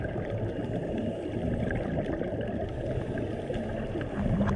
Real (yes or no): yes